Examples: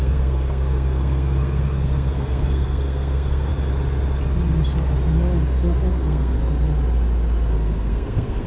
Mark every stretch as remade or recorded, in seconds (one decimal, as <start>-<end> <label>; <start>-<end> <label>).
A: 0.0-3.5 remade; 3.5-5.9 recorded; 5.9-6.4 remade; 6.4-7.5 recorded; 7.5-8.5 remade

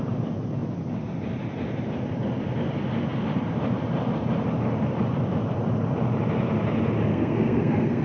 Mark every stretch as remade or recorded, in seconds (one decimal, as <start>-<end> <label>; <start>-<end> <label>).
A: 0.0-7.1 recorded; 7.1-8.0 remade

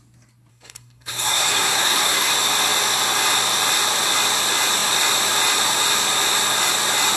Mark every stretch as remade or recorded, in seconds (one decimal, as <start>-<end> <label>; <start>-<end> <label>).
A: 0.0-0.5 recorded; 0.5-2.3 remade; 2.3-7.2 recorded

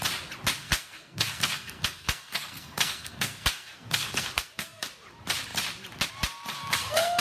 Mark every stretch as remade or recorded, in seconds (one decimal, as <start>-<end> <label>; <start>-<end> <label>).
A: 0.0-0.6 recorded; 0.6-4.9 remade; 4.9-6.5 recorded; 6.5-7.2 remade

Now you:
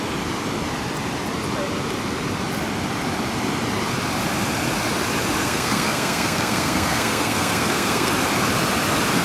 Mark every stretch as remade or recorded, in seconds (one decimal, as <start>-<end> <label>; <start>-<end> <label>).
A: 0.0-5.4 recorded; 5.4-8.1 remade; 8.1-9.2 recorded